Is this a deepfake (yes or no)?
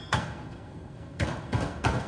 yes